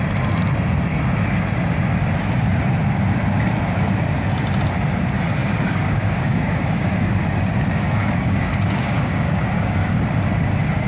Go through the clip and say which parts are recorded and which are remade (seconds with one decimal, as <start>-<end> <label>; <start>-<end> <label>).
0.0-5.4 recorded; 5.4-7.1 remade; 7.1-8.0 recorded; 8.0-10.0 remade; 10.0-10.9 recorded